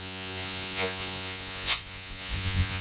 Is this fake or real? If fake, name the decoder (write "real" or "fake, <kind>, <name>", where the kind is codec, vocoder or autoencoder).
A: fake, vocoder, Vocos